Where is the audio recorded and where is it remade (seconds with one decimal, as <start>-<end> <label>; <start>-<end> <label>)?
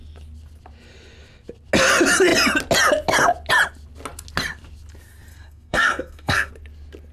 0.0-5.3 recorded; 5.3-6.5 remade; 6.5-7.1 recorded